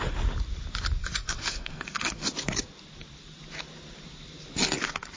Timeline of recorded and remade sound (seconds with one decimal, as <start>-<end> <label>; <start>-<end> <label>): 0.0-1.0 recorded; 1.0-2.3 remade; 2.3-5.2 recorded